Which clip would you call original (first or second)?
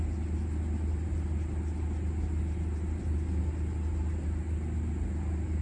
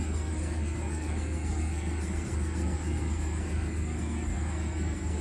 first